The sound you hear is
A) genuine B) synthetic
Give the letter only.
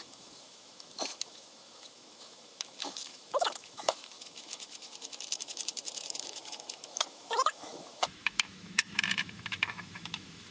B